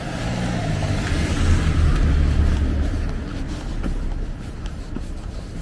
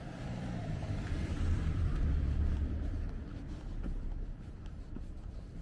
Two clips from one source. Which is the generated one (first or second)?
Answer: second